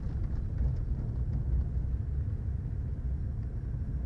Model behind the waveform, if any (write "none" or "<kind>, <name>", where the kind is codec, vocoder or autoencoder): none